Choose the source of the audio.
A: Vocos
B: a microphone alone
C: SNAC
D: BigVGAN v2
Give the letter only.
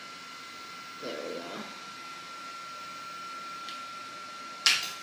B